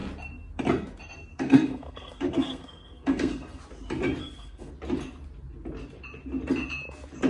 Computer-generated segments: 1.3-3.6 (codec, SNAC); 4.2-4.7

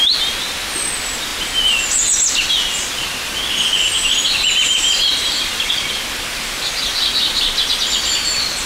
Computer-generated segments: none

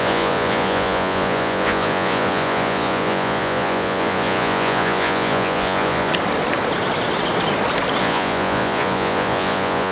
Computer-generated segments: 0.0-6.1 (vocoder, Vocos); 8.0-9.9

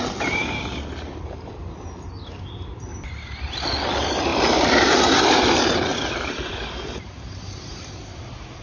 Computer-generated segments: 5.9-8.2 (vocoder, BigVGAN v2)

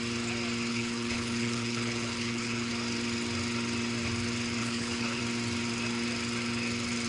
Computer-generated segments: 0.7-2.7 (codec, HILCodec); 4.6-5.2

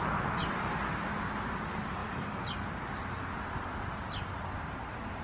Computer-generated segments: none

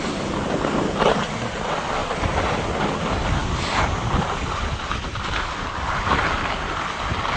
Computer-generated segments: 2.0-2.7 (vocoder, BigVGAN v2)

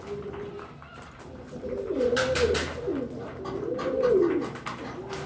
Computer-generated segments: none